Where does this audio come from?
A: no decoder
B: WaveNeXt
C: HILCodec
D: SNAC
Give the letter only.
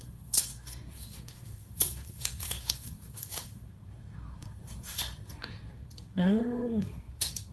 D